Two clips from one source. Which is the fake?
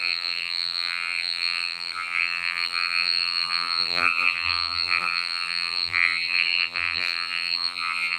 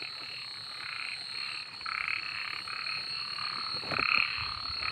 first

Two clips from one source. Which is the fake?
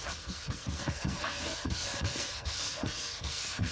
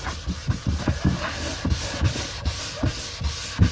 first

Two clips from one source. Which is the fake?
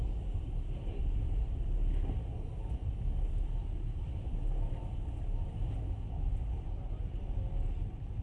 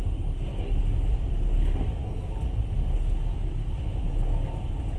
first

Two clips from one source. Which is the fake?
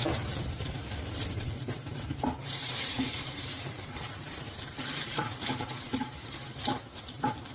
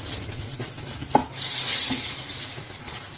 first